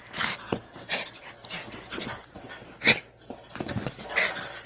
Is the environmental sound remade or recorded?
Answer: recorded